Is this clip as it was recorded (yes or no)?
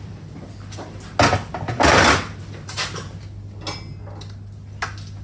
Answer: yes